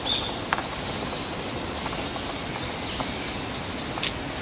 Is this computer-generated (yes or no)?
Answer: no